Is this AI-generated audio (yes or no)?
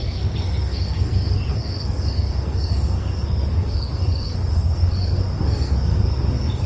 yes